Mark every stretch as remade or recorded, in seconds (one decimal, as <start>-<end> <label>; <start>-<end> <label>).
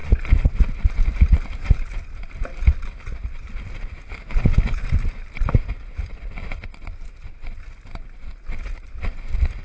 0.0-2.5 recorded; 2.5-3.6 remade; 3.6-9.6 recorded